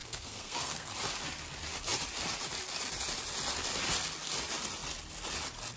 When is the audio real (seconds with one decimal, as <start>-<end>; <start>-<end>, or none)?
0.9-5.8